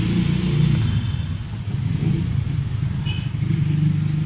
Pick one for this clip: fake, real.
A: real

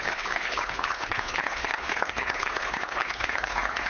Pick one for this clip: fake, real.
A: fake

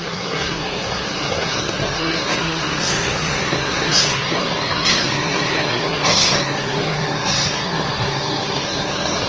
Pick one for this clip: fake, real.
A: fake